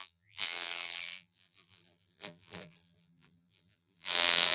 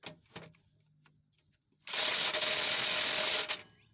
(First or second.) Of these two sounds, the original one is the second